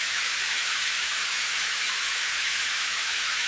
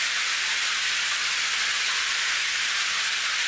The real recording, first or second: second